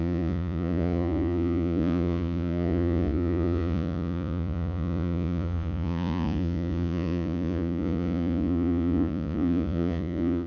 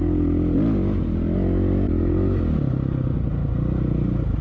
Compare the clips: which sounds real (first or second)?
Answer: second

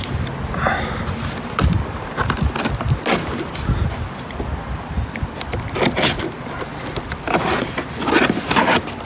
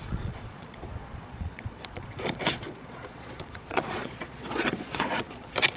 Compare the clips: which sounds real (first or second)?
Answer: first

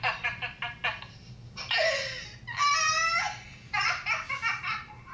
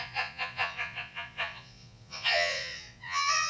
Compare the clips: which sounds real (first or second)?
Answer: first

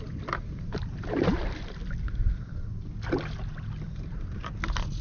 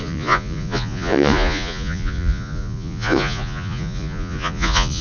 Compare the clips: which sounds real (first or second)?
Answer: first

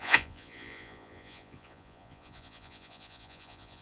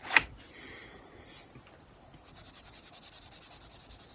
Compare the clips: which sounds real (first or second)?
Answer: second